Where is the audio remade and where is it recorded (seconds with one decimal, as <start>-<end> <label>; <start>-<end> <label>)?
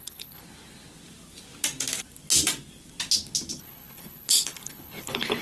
0.0-0.4 remade; 0.4-3.6 recorded; 3.6-5.4 remade